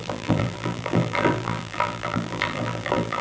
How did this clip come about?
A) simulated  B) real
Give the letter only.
A